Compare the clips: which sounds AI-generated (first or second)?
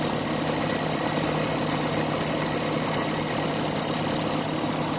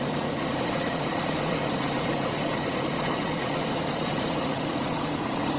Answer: second